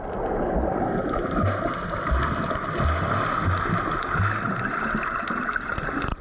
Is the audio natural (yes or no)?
yes